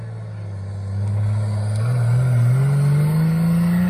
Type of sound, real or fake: real